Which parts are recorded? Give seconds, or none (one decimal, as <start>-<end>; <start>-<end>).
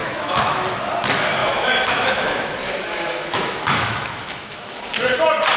0.6-1.4; 4.8-5.6